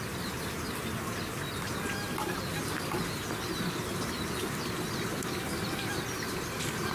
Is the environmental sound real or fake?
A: real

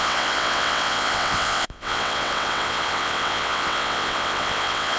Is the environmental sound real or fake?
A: fake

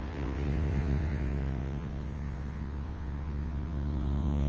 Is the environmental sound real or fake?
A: fake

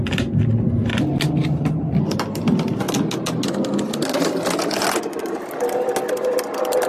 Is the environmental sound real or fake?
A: real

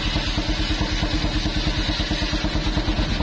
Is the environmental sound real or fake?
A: real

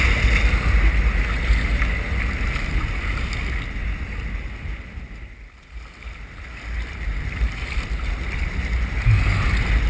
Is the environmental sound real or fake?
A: real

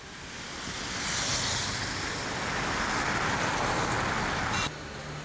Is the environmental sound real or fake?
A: real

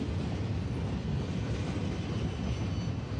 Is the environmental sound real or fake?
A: real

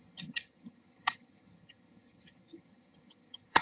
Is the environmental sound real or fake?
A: fake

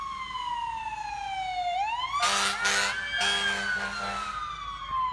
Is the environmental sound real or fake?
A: real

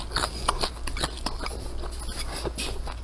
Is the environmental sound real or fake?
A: real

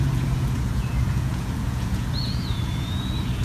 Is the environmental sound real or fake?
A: fake